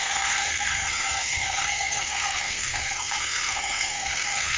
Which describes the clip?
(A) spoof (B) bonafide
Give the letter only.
A